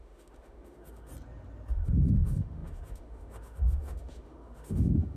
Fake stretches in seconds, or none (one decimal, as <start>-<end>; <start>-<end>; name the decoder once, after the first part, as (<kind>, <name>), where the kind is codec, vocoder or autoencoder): 0.0-1.1 (autoencoder, DAC-VAE); 1.7-5.2